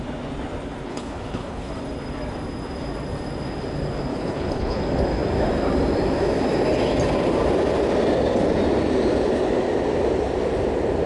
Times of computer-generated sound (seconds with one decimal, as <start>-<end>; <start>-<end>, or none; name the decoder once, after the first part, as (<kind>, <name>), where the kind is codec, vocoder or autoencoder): 0.9-1.7 (codec, HILCodec); 4.1-4.8